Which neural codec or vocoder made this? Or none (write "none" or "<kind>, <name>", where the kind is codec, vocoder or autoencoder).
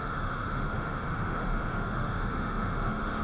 autoencoder, DAC-VAE